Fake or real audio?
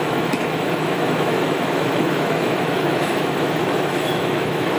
fake